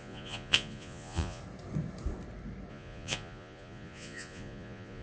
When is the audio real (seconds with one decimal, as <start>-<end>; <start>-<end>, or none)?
1.4-2.7